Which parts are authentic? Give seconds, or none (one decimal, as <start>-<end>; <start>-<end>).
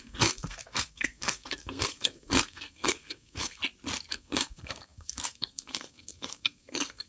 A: 3.6-4.1